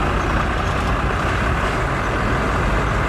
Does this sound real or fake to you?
real